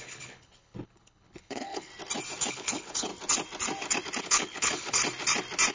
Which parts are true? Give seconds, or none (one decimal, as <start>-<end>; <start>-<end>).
1.9-2.5; 3.1-4.2; 5.0-5.7